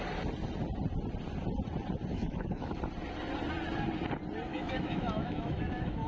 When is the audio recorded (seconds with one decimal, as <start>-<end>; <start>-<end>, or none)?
0.0-2.1; 2.8-4.5